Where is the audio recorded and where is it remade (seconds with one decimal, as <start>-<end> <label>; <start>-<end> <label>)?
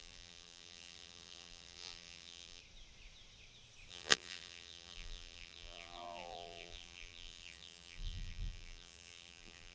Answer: 0.0-2.6 remade; 2.6-3.9 recorded; 3.9-9.7 remade